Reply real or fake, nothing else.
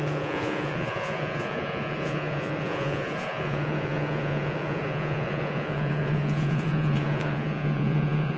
fake